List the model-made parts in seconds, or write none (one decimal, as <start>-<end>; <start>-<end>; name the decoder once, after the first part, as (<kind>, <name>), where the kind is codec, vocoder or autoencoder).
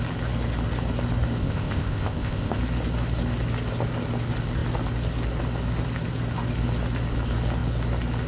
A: 1.4-2.6 (codec, ZipCodec)